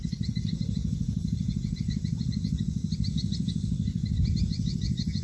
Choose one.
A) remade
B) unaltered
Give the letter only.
B